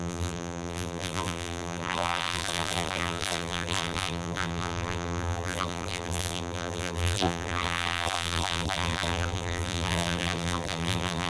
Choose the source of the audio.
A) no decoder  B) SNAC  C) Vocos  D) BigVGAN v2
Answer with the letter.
D